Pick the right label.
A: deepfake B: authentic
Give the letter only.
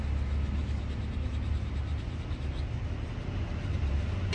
B